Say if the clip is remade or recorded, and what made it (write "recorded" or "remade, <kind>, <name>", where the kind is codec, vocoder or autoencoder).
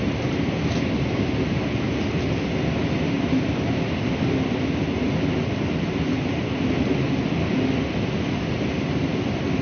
recorded